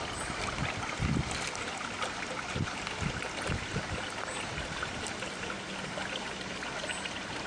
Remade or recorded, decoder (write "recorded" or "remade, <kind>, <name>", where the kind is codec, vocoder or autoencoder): recorded